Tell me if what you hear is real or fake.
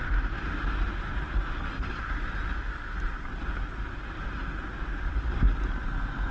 real